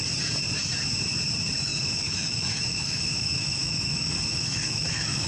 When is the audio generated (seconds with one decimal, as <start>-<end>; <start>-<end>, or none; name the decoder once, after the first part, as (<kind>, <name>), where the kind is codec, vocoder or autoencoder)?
1.7-5.3 (autoencoder, DAC-VAE)